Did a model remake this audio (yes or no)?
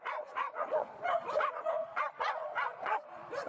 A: yes